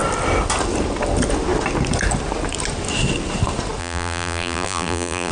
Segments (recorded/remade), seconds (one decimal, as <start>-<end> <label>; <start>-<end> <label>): 0.0-3.8 recorded; 3.8-5.3 remade

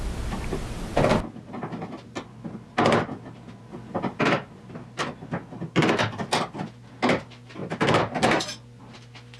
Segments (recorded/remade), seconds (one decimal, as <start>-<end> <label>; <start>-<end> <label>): 0.0-9.4 recorded

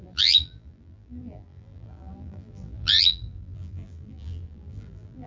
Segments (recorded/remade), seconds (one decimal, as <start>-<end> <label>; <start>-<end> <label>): 0.0-5.3 remade